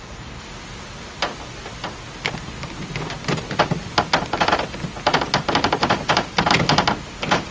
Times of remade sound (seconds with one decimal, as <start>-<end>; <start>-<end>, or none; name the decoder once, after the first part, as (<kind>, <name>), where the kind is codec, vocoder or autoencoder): none